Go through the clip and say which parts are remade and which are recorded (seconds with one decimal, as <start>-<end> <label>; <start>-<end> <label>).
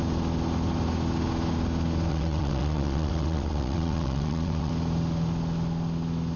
0.0-2.1 recorded; 2.1-4.7 remade; 4.7-6.4 recorded